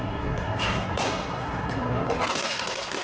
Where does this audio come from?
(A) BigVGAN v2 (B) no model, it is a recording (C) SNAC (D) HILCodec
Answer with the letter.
C